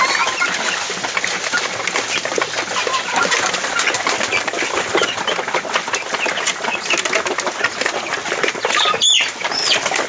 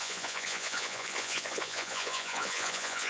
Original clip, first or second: first